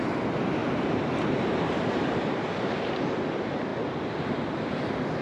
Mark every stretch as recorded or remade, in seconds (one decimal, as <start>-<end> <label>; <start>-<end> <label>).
0.0-0.6 recorded; 0.6-2.8 remade; 2.8-5.2 recorded